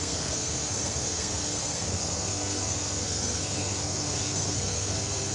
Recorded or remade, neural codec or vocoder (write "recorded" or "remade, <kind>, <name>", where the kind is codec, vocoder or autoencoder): remade, codec, SNAC